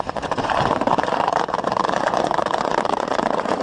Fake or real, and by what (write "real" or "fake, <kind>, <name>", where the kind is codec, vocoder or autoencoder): fake, vocoder, Vocos